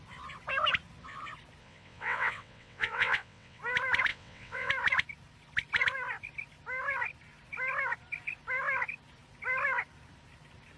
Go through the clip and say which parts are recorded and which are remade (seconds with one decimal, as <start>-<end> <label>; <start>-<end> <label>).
0.0-1.6 recorded; 1.6-3.6 remade; 3.6-4.1 recorded; 4.1-4.7 remade; 4.7-10.8 recorded